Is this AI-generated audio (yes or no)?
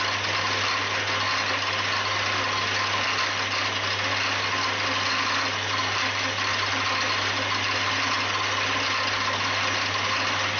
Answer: no